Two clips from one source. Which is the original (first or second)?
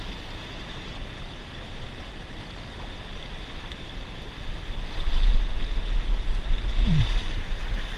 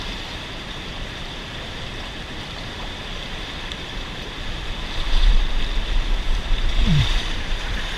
first